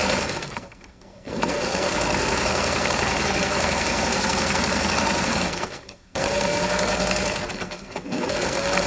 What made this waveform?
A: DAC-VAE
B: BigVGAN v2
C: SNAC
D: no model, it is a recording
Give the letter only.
C